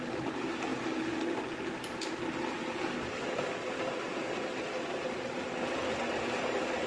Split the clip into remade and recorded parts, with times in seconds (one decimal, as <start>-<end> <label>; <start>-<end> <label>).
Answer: 0.0-6.9 recorded